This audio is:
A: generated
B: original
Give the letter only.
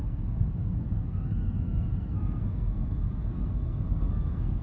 A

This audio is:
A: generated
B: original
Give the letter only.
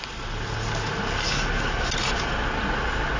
B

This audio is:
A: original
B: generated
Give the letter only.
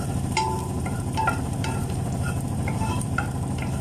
B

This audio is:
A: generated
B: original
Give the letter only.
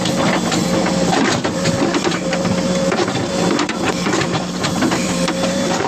A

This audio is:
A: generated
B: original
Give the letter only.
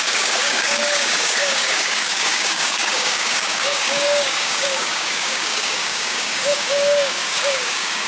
A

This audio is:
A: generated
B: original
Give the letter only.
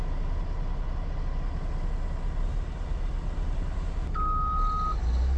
B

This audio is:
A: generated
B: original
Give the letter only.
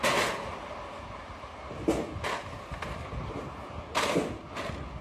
B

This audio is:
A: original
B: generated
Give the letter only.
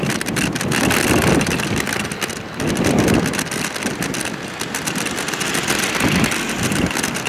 A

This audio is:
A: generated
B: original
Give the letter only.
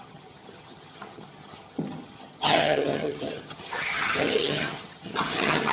A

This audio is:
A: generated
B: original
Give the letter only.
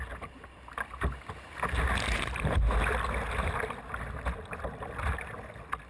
B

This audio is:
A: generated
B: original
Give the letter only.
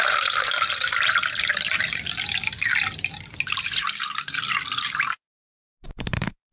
B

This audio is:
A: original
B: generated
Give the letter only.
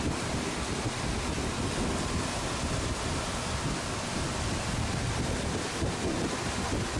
A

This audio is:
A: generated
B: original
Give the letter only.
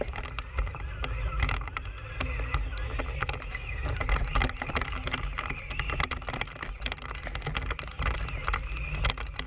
B